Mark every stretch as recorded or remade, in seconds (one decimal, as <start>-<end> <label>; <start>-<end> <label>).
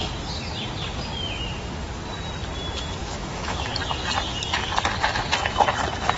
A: 0.0-3.0 recorded; 3.0-3.7 remade; 3.7-6.2 recorded